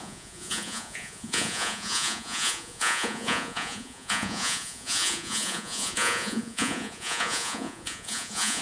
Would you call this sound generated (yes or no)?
yes